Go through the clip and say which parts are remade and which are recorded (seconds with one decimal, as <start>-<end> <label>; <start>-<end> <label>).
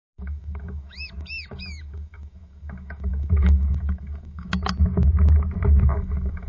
0.0-4.5 remade; 4.5-5.8 recorded; 5.8-6.5 remade